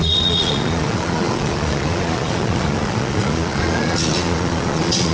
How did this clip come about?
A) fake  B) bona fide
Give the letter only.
A